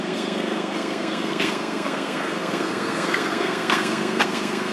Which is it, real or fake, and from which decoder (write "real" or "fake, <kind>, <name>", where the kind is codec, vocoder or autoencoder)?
fake, codec, SNAC